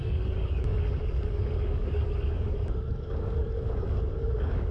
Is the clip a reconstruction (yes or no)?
yes